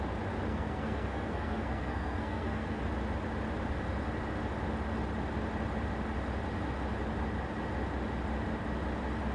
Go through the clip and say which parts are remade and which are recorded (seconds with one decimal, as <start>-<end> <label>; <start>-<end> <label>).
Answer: 0.0-0.5 recorded; 0.5-2.8 remade; 2.8-9.3 recorded